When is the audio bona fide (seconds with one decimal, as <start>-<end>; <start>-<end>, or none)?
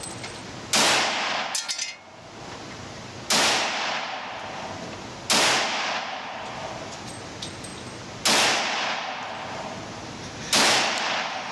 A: 0.0-11.5